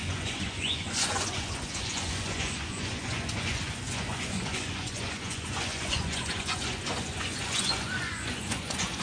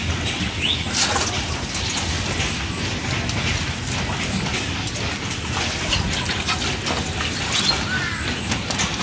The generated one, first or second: first